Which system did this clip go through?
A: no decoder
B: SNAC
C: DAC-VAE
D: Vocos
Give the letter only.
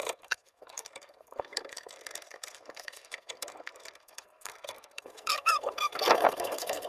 B